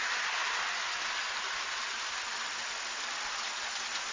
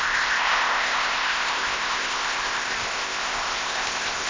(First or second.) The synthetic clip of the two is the second